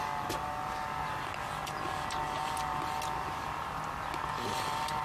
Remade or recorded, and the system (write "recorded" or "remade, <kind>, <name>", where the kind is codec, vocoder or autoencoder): recorded